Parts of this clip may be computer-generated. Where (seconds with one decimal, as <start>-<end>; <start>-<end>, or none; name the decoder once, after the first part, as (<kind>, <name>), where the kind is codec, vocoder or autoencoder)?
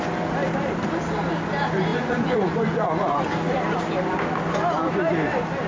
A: 1.9-3.2 (vocoder, Vocos)